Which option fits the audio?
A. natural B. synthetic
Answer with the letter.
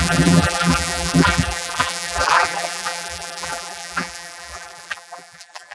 B